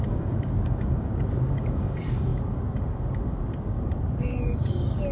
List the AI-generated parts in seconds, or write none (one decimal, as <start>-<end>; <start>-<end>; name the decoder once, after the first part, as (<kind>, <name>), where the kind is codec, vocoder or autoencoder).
0.0-5.1 (codec, DAC)